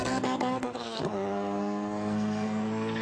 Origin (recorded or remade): remade